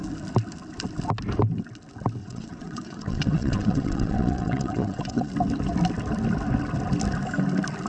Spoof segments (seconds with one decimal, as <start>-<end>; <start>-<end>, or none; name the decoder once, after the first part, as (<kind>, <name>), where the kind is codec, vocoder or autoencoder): 2.2-5.3 (vocoder, WaveNeXt)